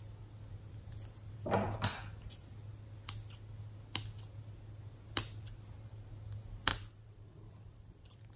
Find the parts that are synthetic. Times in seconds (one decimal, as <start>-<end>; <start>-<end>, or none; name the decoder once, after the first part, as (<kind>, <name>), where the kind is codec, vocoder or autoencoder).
6.7-8.4 (vocoder, BigVGAN v2)